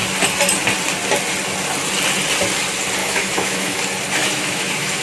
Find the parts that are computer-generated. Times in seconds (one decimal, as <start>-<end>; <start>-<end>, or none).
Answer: 3.0-3.8; 4.2-5.0